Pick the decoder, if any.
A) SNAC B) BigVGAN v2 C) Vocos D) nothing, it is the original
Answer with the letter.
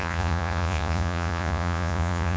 C